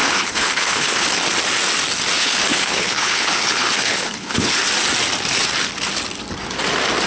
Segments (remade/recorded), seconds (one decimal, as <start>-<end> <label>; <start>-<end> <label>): 0.0-1.1 remade; 1.1-2.2 recorded; 2.2-4.6 remade; 4.6-7.1 recorded